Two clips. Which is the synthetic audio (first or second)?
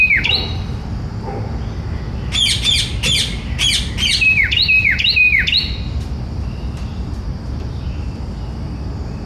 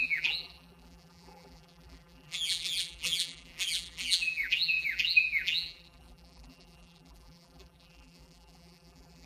second